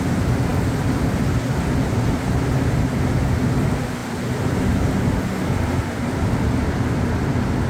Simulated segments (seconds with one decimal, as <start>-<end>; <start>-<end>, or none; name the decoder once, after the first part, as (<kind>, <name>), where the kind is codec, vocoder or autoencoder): none